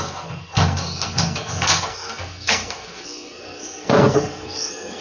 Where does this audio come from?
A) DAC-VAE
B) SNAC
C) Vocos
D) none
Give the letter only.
B